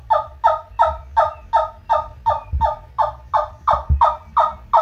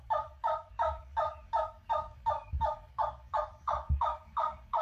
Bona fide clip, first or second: first